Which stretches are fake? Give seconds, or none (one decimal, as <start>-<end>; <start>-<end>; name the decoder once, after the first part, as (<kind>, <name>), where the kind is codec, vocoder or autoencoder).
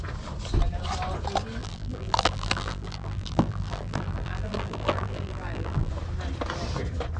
1.6-5.9 (vocoder, BigVGAN v2)